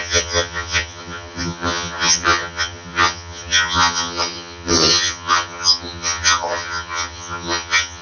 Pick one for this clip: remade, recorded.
remade